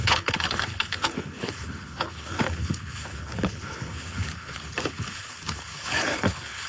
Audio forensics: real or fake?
fake